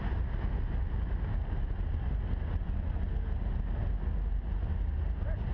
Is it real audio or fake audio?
real